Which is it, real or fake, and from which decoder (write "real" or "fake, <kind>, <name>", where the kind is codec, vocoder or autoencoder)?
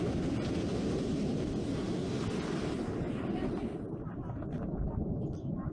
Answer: real